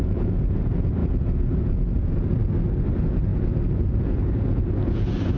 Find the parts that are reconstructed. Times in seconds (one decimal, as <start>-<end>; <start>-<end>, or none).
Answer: 0.0-2.4; 2.9-5.4